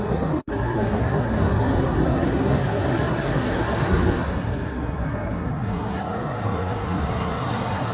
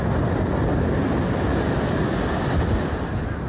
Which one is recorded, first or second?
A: second